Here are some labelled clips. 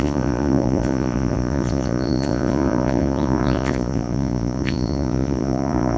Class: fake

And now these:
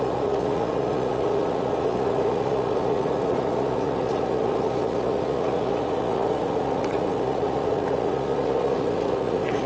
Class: fake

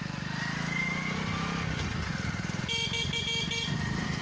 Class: real